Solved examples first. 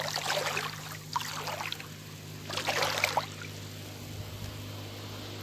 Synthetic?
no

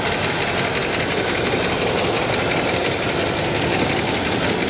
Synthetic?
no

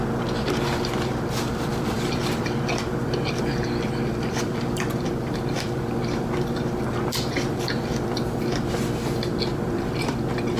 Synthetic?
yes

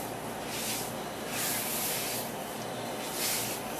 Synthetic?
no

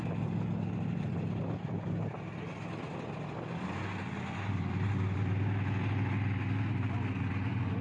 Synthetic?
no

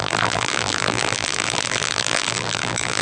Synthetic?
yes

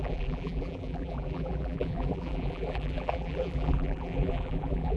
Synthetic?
yes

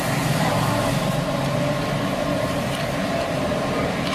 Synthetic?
no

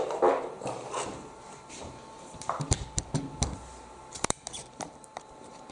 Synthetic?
yes